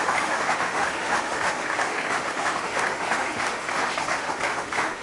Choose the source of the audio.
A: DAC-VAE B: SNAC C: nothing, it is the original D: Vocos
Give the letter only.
A